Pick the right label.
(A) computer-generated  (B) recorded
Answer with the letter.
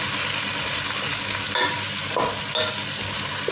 B